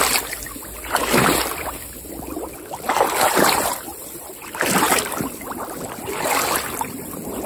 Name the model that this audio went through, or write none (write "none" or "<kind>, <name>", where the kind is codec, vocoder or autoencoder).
vocoder, BigVGAN v2